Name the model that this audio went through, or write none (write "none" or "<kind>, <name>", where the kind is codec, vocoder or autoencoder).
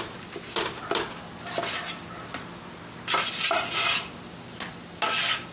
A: none